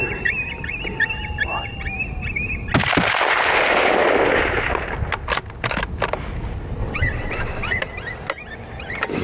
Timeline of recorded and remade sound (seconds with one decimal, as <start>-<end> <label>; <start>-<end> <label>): 0.0-6.8 recorded; 6.8-7.8 remade; 7.8-9.2 recorded